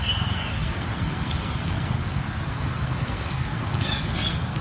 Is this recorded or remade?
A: remade